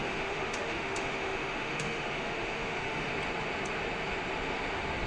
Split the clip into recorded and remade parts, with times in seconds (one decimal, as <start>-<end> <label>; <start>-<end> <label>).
0.0-3.1 remade; 3.1-5.1 recorded